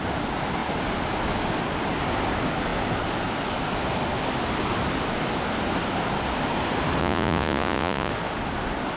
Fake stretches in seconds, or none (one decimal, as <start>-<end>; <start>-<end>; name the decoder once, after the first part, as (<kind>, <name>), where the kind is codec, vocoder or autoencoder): 7.0-8.1 (vocoder, Vocos)

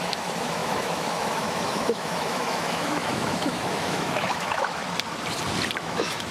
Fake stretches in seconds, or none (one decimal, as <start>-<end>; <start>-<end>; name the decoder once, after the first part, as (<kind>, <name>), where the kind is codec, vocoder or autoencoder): 0.0-4.8 (autoencoder, DAC-VAE); 5.8-6.3

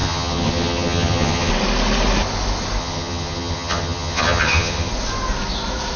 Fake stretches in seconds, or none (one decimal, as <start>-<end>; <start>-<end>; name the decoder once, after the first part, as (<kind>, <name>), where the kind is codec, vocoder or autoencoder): 0.0-1.5 (vocoder, HiFi-GAN); 2.8-4.9